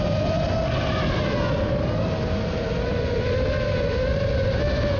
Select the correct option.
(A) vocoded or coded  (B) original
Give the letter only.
B